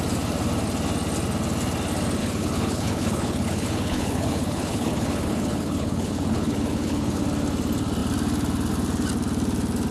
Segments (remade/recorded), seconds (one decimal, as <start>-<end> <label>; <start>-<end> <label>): 0.0-2.2 recorded; 2.2-7.2 remade; 7.2-9.9 recorded